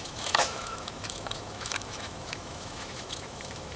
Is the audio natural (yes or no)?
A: no